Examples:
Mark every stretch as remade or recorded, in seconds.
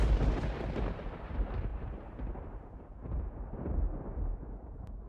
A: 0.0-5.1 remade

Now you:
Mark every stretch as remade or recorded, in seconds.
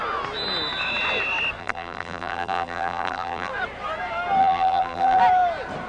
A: 0.0-1.6 recorded; 1.6-3.5 remade; 3.5-4.4 recorded; 4.4-5.2 remade; 5.2-5.9 recorded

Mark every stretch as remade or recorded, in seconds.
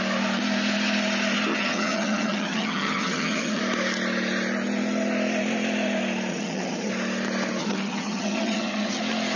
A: 0.0-1.5 recorded; 1.5-3.6 remade; 3.6-6.3 recorded; 6.3-6.9 remade; 6.9-7.6 recorded; 7.6-9.0 remade; 9.0-9.4 recorded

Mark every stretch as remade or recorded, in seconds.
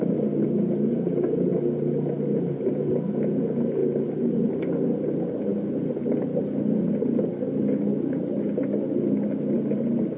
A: 0.0-3.8 recorded; 3.8-4.5 remade; 4.5-5.5 recorded; 5.5-7.2 remade; 7.2-10.2 recorded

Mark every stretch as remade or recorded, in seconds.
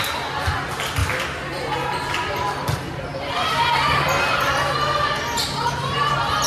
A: 0.0-6.5 recorded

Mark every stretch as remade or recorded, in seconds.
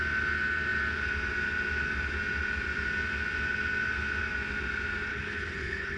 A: 0.0-5.1 recorded; 5.1-6.0 remade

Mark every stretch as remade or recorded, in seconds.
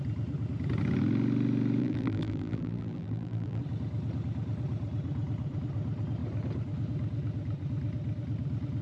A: 0.0-1.8 recorded; 1.8-3.6 remade; 3.6-8.8 recorded